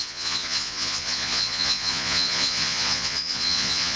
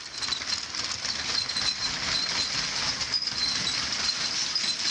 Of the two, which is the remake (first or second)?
first